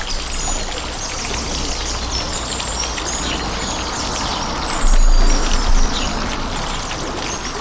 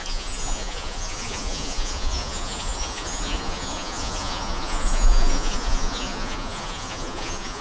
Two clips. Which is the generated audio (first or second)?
second